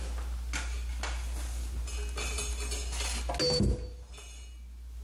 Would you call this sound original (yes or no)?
yes